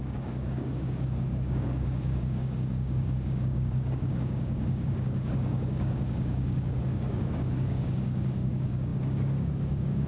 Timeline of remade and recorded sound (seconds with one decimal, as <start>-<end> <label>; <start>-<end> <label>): 0.0-10.1 remade